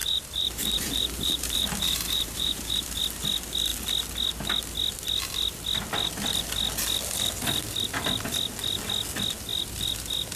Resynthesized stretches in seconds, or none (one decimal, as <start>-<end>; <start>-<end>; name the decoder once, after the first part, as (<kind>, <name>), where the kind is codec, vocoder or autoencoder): 0.0-3.0 (vocoder, BigVGAN v2)

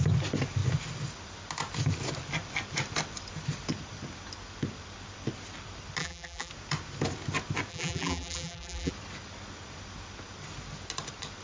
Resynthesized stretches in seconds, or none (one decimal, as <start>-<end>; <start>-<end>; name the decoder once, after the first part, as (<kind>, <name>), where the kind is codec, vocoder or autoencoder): 6.0-6.5 (vocoder, BigVGAN v2); 7.7-8.9

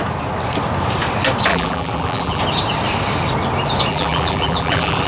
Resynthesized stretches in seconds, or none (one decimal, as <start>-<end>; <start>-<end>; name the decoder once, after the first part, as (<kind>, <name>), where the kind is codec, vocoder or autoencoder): 1.5-2.4 (vocoder, BigVGAN v2); 3.9-5.1

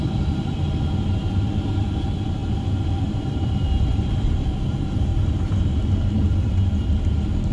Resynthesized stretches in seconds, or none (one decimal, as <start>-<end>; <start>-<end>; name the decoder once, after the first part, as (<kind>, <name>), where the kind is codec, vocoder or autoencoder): 0.0-2.4 (vocoder, BigVGAN v2); 2.9-5.1; 5.6-7.5